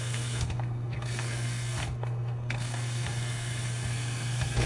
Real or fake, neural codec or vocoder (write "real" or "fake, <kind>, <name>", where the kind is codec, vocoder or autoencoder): fake, codec, SNAC